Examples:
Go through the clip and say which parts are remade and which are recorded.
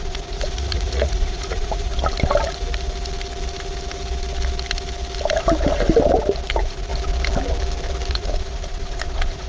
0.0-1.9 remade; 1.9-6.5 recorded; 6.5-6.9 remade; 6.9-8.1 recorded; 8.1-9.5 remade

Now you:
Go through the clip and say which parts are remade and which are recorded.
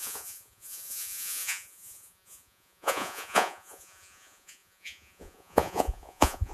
0.0-6.5 remade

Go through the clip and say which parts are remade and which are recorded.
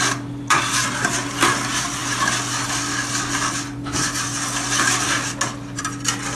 0.0-6.3 recorded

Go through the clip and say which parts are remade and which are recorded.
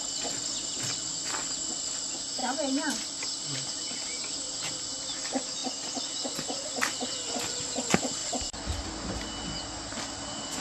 0.0-10.6 recorded